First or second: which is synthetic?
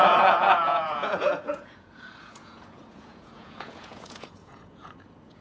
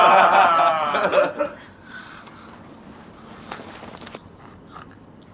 first